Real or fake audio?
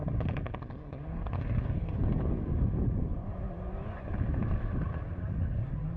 real